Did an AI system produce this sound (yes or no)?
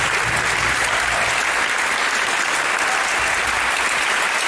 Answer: no